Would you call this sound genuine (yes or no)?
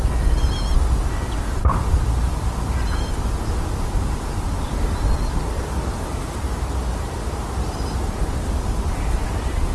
yes